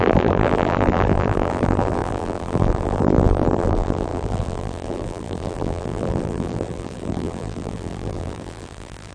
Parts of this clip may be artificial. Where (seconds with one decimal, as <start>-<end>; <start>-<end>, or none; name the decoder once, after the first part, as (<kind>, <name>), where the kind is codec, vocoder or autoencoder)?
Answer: 0.0-9.1 (vocoder, BigVGAN v2)